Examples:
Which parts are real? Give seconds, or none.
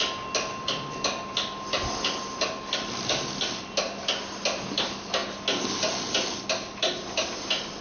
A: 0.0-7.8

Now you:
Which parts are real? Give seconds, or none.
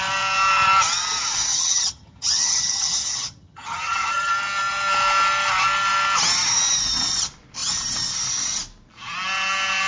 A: 0.0-1.5; 4.3-9.9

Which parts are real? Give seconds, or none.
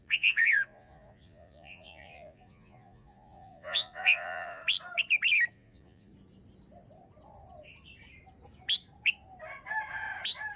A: 4.6-5.5; 6.1-10.6